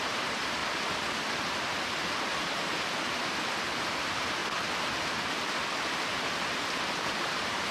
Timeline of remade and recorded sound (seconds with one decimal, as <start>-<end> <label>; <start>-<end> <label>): 0.0-0.6 remade; 0.6-2.9 recorded; 2.9-4.4 remade; 4.4-7.0 recorded; 7.0-7.7 remade

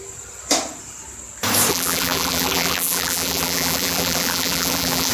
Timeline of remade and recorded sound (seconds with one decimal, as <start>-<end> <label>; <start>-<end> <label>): 0.0-1.7 recorded; 1.7-5.1 remade

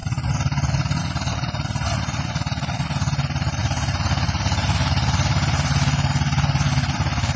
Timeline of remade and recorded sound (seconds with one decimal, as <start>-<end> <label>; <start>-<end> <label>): 0.0-1.0 recorded; 1.0-7.4 remade